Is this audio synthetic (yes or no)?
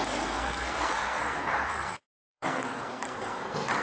yes